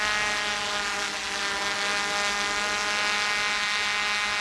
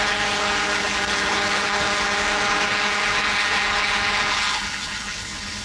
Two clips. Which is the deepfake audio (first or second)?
second